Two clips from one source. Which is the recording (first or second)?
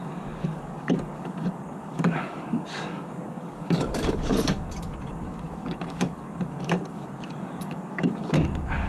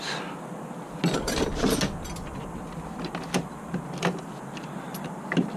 second